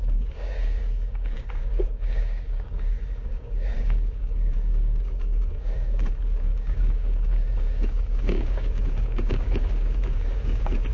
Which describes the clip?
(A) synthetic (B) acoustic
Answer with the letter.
A